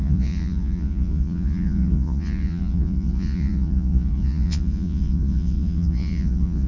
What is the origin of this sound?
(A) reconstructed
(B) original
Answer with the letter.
A